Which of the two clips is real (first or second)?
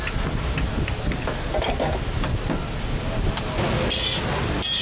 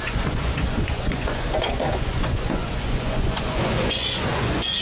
first